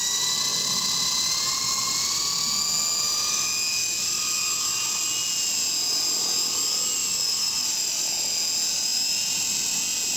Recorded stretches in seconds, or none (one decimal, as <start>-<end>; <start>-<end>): 0.0-7.0; 8.0-8.9; 9.7-10.2